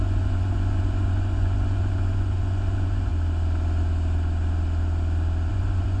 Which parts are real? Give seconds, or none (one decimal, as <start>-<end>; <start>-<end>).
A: 3.1-5.5